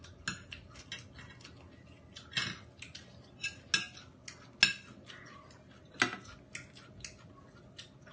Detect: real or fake real